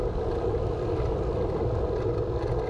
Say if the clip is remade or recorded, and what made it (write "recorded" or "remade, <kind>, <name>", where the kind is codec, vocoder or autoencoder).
recorded